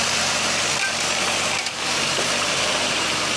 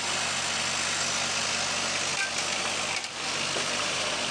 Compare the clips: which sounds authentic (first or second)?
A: second